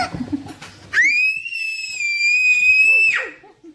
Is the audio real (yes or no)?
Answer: yes